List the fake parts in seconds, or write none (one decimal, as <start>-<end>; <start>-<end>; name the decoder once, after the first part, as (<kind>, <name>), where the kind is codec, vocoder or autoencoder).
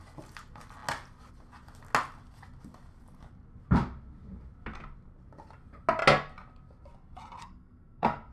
7.4-8.3 (codec, SNAC)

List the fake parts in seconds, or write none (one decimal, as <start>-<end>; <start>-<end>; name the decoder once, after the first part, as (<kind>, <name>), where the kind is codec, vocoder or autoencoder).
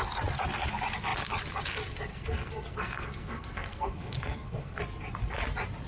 2.1-4.8 (codec, SNAC)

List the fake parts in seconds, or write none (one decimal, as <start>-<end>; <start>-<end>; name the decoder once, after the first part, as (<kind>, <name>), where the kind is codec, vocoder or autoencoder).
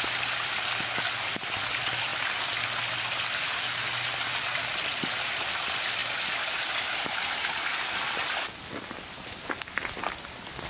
none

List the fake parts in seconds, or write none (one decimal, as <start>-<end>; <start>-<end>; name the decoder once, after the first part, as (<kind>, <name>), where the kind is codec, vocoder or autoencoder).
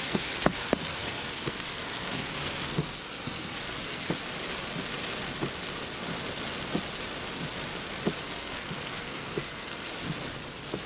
0.0-4.2 (codec, SNAC); 8.2-9.9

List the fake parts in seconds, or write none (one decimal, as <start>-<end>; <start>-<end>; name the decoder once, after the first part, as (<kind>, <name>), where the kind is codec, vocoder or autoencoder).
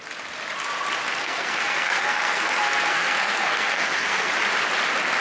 1.2-4.3 (codec, SNAC)